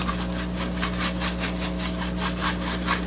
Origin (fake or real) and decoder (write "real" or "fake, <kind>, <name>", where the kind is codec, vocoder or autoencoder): real